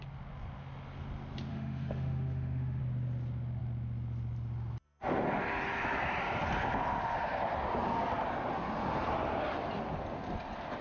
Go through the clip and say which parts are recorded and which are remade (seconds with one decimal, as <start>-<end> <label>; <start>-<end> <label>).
0.0-1.5 recorded; 1.5-2.8 remade; 2.8-10.8 recorded